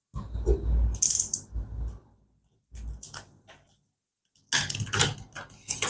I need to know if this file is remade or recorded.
recorded